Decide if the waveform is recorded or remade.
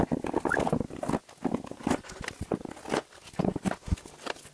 recorded